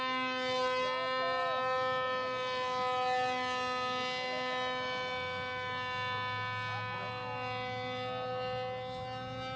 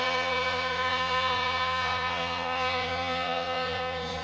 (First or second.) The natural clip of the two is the first